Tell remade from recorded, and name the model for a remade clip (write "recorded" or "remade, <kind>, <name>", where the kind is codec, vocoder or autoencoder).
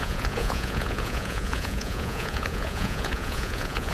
remade, vocoder, Vocos